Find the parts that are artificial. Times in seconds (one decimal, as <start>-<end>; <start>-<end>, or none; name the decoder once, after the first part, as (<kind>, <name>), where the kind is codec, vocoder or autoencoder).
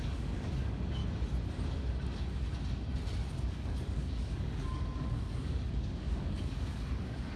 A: 0.0-1.0 (codec, DAC); 3.3-7.4